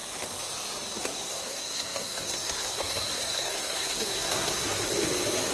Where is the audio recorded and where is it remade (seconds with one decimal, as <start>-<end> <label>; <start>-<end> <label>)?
0.0-1.0 recorded; 1.0-4.8 remade; 4.8-5.5 recorded